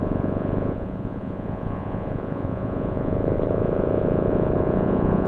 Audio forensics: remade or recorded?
remade